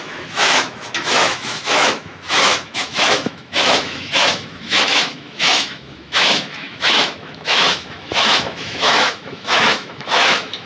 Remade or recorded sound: remade